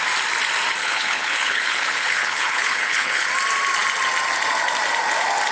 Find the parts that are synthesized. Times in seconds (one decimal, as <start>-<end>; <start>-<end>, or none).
0.8-3.3